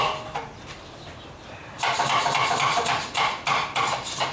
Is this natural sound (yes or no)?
yes